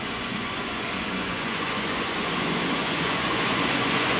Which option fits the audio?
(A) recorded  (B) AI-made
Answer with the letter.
B